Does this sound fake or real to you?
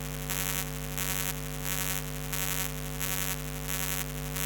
real